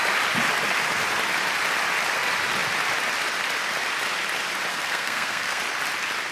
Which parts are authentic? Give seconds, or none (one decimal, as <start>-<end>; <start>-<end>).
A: 0.0-4.7; 5.6-6.3